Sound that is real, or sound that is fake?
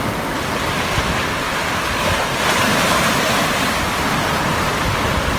real